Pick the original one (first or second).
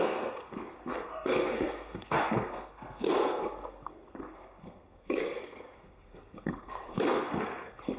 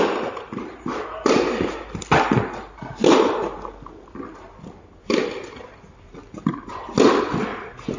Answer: second